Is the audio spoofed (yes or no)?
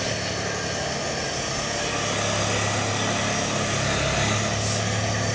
no